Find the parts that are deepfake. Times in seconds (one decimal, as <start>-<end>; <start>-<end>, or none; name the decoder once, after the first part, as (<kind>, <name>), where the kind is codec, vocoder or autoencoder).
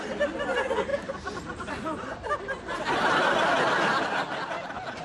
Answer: 0.9-3.6 (vocoder, BigVGAN v2)